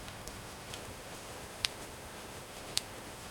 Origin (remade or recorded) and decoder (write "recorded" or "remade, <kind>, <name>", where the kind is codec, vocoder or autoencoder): remade, autoencoder, DAC-VAE